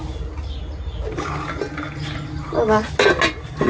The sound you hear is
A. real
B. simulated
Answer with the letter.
A